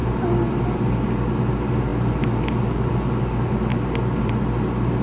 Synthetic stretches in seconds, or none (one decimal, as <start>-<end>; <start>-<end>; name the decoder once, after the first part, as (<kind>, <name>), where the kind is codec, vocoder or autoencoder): 1.9-2.9 (vocoder, BigVGAN v2); 3.7-4.3